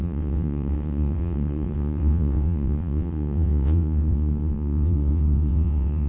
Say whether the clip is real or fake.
fake